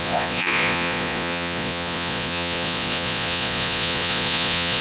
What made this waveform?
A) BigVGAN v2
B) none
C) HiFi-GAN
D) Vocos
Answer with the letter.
D